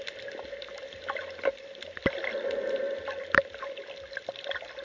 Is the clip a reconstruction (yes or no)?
no